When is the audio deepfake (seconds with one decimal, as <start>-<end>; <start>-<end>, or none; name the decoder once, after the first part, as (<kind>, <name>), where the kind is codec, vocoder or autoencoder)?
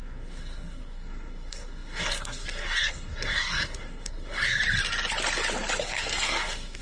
0.0-4.6 (codec, SNAC); 5.8-6.8